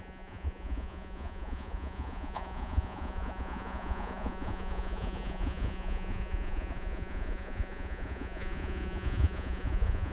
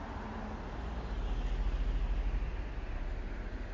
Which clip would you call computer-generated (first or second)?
first